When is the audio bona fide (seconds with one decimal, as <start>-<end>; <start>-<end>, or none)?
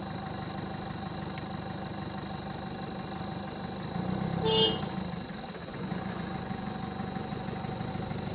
0.0-5.6; 7.9-8.3